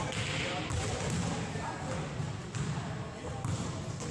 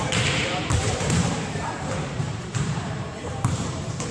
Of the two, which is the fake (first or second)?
second